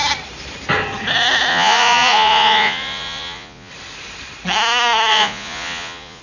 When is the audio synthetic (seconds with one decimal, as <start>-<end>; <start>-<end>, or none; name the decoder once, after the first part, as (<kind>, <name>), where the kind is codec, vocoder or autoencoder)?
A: 1.5-3.7 (vocoder, Vocos); 5.1-6.2